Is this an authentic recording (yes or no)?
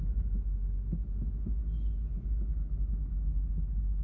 yes